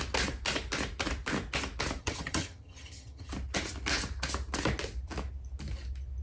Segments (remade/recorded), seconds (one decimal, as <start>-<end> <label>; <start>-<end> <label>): 0.0-2.0 recorded; 2.0-3.3 remade; 3.3-6.2 recorded